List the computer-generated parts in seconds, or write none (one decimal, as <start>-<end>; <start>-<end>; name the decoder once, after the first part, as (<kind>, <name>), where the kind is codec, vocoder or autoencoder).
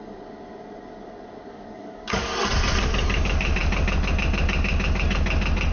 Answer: 1.5-2.3 (codec, DAC)